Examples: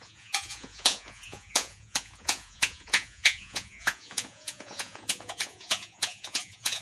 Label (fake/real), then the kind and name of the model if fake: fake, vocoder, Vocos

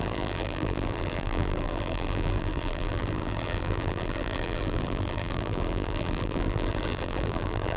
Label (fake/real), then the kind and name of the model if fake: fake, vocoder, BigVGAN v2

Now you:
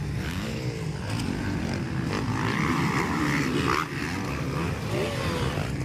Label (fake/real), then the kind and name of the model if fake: real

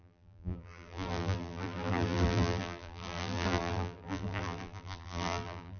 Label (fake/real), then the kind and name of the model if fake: fake, vocoder, BigVGAN v2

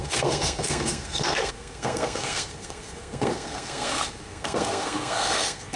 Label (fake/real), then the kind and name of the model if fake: fake, codec, SNAC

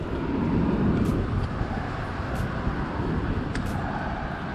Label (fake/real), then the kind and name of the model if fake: real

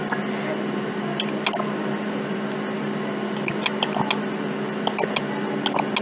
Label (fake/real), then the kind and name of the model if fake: real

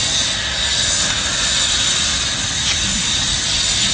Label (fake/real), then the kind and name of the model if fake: real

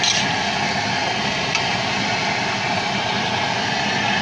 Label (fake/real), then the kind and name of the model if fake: real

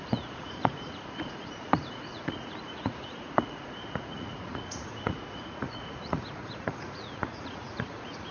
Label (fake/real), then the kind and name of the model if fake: fake, vocoder, Vocos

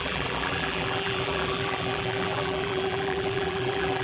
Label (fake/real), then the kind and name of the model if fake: fake, vocoder, BigVGAN v2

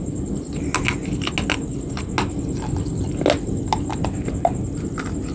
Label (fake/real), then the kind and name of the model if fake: real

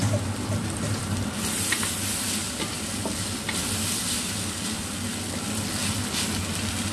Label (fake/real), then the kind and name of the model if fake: real